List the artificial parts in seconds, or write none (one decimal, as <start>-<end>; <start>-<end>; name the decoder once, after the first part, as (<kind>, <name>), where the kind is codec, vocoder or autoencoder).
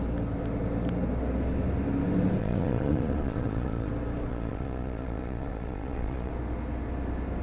2.4-3.9 (vocoder, Vocos); 4.3-6.3